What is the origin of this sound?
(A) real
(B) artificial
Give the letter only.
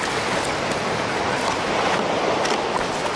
A